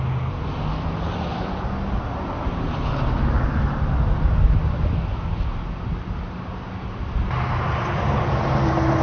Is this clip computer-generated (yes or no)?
no